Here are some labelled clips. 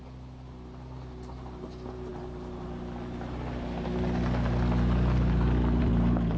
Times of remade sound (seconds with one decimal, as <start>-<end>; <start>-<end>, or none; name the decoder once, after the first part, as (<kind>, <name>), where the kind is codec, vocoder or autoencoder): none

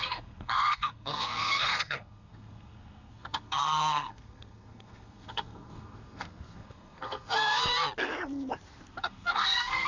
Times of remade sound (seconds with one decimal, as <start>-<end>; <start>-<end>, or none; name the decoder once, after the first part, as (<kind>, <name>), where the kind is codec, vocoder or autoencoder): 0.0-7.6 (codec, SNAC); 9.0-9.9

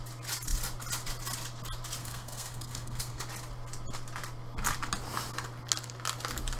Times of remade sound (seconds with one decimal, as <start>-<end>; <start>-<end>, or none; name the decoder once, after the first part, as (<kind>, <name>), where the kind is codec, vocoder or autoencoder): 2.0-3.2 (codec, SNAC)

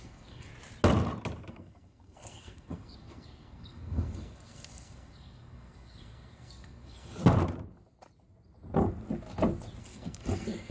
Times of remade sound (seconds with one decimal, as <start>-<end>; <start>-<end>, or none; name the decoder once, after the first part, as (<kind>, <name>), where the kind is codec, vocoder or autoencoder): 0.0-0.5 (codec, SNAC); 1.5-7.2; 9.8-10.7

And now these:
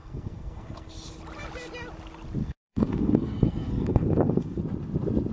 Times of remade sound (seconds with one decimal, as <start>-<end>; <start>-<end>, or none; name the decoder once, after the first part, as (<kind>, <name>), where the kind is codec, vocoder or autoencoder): 0.0-0.9 (codec, SNAC); 2.4-4.6